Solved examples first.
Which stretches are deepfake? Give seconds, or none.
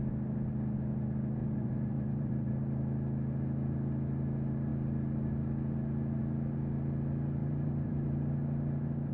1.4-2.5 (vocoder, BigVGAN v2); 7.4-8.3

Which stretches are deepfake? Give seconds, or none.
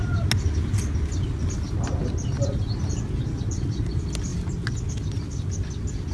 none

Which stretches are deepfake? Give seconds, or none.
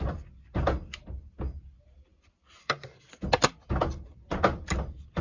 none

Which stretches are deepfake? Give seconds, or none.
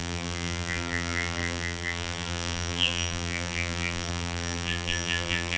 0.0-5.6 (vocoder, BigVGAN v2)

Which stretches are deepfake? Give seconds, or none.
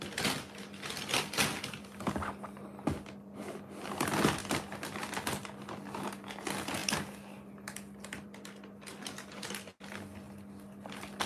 none